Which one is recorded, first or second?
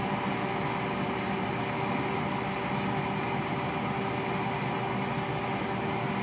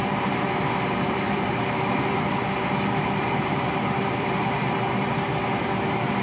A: first